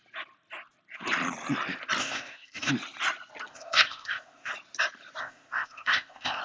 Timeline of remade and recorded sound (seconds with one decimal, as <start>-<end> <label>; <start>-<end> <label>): 0.0-2.0 recorded; 2.0-2.7 remade; 2.7-3.5 recorded; 3.5-4.5 remade; 4.5-5.2 recorded; 5.2-6.4 remade